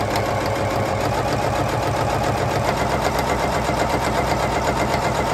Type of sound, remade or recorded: remade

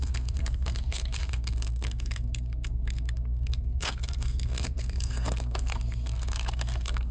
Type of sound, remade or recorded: remade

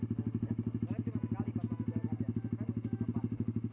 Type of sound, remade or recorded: recorded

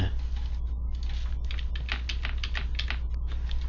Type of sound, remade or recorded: recorded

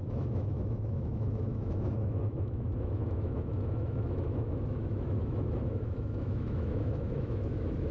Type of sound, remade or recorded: remade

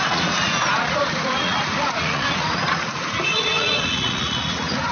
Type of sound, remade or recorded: remade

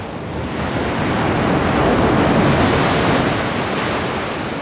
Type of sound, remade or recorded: recorded